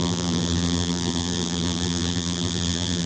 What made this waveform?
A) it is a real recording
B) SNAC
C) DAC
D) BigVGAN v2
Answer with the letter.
D